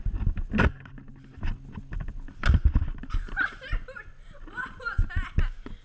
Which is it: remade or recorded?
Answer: recorded